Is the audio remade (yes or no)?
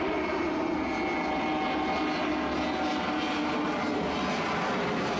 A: no